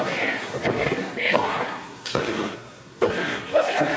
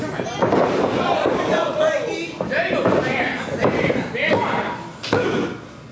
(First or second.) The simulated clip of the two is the first